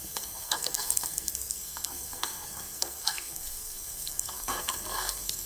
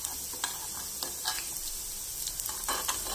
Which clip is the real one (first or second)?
second